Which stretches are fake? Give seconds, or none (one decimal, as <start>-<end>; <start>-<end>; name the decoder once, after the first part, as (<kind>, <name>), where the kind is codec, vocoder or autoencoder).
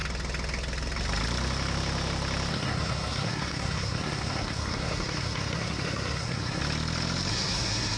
2.5-6.6 (codec, SNAC); 7.3-8.0